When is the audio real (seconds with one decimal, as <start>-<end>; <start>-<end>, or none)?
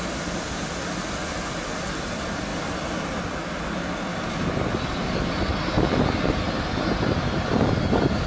0.0-2.5; 3.2-8.3